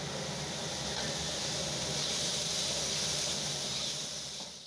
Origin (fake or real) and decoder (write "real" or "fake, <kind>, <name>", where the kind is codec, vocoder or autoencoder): real